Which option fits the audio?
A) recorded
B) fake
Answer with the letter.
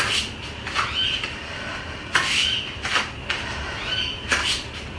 A